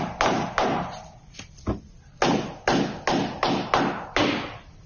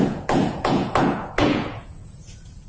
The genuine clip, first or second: first